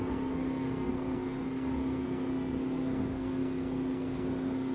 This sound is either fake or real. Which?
fake